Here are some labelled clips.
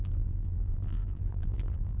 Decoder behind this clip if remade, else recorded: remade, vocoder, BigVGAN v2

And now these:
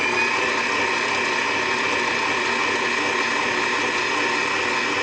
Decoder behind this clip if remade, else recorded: recorded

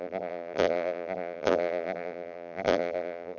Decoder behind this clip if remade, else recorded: remade, vocoder, BigVGAN v2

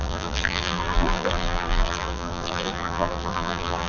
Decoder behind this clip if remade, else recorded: remade, vocoder, BigVGAN v2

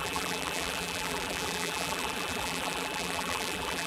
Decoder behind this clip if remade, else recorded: remade, vocoder, BigVGAN v2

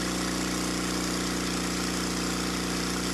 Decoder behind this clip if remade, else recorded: recorded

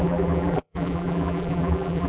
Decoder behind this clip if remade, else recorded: remade, vocoder, BigVGAN v2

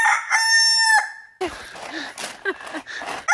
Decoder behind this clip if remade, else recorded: recorded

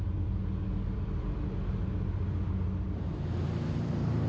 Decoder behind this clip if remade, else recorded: recorded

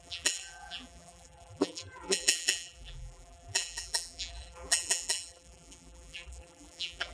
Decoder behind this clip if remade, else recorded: remade, vocoder, BigVGAN v2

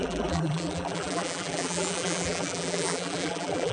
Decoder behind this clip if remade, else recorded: remade, vocoder, BigVGAN v2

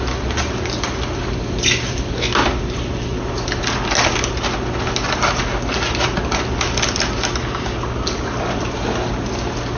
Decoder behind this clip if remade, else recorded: recorded